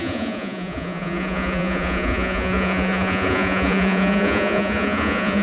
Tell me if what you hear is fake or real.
fake